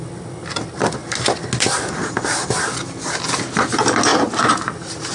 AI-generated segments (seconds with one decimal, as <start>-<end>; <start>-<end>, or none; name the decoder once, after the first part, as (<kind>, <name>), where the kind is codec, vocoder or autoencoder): 4.1-5.1 (vocoder, BigVGAN v2)